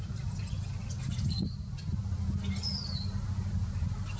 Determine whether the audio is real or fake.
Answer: real